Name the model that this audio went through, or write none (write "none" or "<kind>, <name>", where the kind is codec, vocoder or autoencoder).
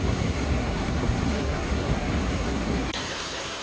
codec, SNAC